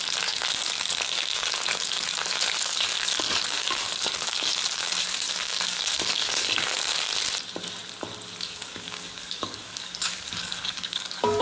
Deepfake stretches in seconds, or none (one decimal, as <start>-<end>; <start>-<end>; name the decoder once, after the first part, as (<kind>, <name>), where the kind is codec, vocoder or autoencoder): 0.0-7.1 (codec, DAC); 8.4-11.4